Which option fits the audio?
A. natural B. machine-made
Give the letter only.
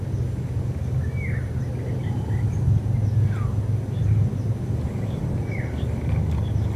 A